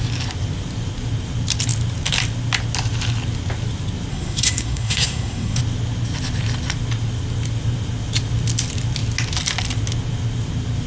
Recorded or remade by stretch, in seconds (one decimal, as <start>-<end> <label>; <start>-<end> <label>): 0.0-4.1 recorded; 4.1-5.6 remade; 5.6-10.9 recorded